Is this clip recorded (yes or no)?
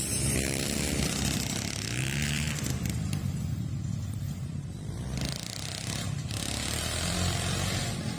no